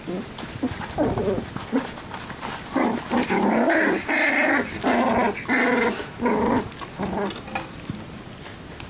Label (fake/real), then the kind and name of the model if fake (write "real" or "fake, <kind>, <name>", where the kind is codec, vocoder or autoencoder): real